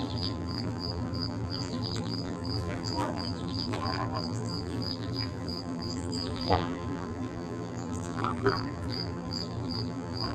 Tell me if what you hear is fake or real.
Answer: fake